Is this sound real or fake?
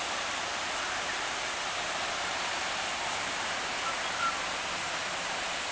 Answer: real